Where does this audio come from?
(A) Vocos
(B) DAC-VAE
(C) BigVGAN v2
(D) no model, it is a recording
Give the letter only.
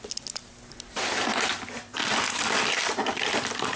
D